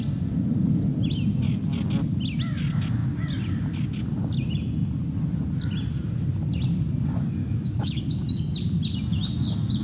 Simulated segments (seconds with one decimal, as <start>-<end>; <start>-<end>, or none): 7.4-8.0